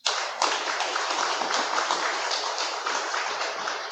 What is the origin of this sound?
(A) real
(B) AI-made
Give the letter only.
B